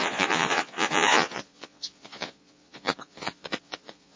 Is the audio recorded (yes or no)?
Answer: no